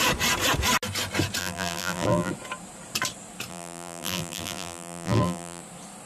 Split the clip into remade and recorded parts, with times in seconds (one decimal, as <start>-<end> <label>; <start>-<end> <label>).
0.0-1.4 recorded; 1.4-2.3 remade; 2.3-3.5 recorded; 3.5-5.6 remade; 5.6-6.1 recorded